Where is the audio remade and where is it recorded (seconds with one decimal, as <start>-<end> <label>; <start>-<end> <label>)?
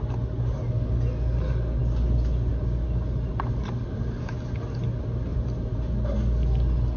0.0-5.3 recorded; 5.3-5.8 remade; 5.8-7.0 recorded